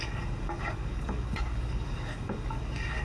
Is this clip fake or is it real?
fake